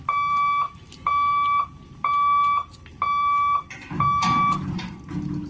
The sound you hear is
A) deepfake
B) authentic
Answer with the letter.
B